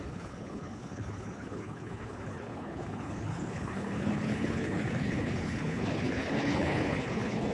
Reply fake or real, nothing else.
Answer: fake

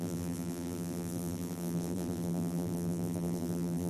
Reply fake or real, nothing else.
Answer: fake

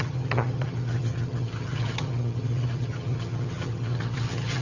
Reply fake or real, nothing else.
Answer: fake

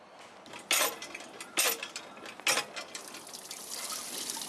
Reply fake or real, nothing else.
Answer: real